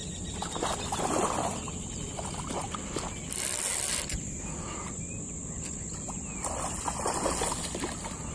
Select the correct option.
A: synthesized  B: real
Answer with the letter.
B